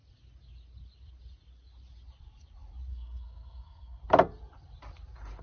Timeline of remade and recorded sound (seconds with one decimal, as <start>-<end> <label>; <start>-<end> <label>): 0.0-2.9 recorded; 2.9-4.0 remade; 4.0-5.4 recorded